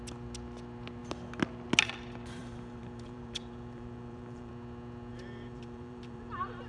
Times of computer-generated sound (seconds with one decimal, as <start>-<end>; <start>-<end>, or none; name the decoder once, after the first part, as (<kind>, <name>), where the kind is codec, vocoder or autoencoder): 2.4-4.5 (vocoder, BigVGAN v2); 5.1-6.7